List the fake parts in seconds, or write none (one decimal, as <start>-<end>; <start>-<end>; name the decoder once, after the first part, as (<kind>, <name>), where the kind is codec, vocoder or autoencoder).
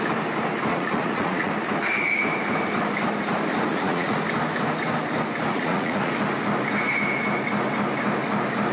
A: 0.7-1.5 (vocoder, Vocos); 3.7-4.2; 5.5-6.1